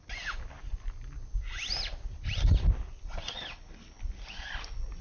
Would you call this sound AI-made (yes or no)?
no